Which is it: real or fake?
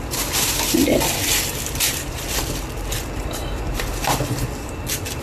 fake